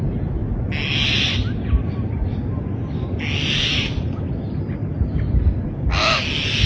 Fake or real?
real